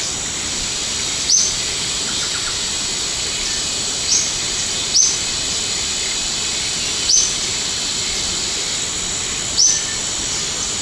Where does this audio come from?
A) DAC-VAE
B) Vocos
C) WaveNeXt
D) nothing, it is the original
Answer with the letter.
D